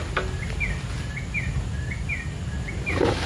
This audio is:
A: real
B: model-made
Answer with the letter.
A